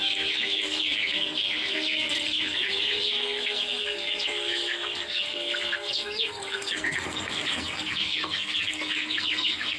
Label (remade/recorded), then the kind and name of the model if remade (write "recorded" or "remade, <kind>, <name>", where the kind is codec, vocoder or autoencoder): remade, codec, SNAC